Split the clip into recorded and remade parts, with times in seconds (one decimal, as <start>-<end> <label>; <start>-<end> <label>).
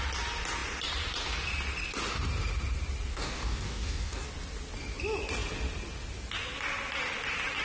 0.0-3.1 recorded; 3.1-4.3 remade; 4.3-7.6 recorded